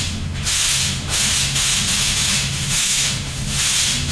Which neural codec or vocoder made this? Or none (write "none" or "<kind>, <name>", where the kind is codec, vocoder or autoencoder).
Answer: autoencoder, DAC-VAE